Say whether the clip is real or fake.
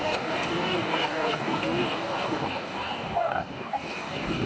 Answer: fake